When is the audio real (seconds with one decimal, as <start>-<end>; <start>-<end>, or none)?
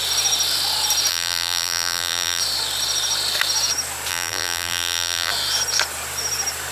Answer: 0.0-1.1; 2.4-4.1; 5.3-6.7